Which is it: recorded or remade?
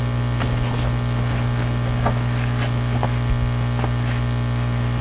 recorded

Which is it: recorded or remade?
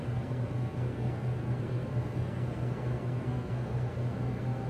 remade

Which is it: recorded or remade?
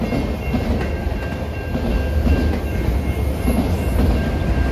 recorded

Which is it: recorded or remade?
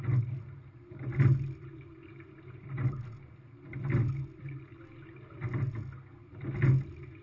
recorded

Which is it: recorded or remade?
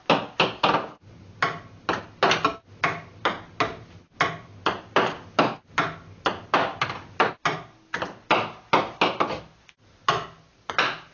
recorded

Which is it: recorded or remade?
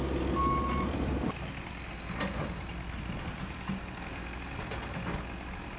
recorded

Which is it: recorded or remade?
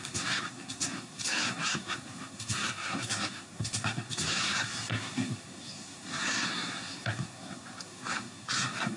remade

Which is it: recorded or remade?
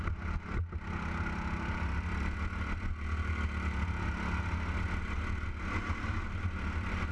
recorded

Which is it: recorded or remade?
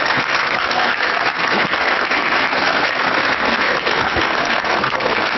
remade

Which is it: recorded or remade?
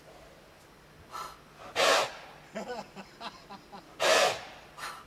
recorded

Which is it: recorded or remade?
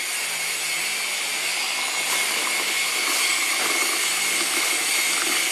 recorded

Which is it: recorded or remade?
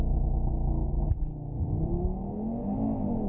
recorded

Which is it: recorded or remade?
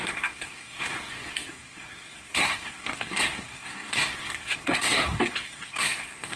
remade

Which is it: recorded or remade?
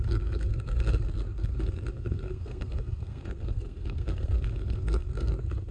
remade